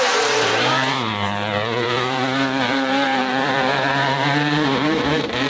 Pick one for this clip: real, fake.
fake